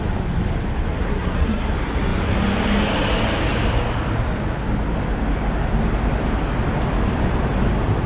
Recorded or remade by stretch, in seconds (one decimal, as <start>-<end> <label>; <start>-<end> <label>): 0.0-0.9 recorded; 0.9-1.7 remade; 1.7-8.1 recorded